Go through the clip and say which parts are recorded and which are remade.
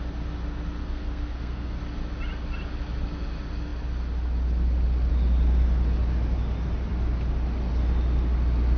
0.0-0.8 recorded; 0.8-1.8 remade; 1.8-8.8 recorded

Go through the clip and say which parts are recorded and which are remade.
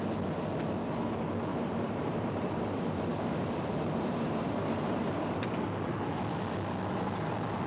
0.0-1.5 recorded; 1.5-5.5 remade; 5.5-7.7 recorded